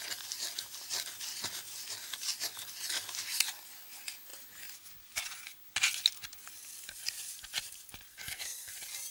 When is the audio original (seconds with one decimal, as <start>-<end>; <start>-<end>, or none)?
0.0-8.1; 8.7-9.1